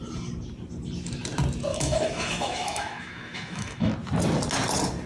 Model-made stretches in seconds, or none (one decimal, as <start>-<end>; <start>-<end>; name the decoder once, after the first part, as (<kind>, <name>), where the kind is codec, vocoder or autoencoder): 1.7-3.9 (autoencoder, DAC-VAE)